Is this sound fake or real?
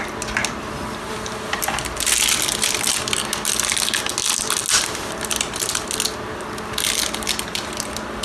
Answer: real